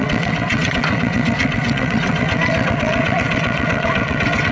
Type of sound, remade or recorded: remade